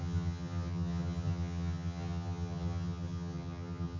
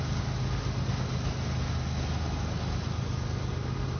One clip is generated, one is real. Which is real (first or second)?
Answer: second